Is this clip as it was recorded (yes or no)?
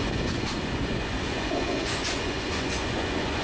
no